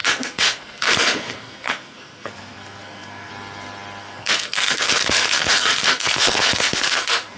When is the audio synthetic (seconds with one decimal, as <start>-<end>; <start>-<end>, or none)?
0.0-3.3; 4.0-7.4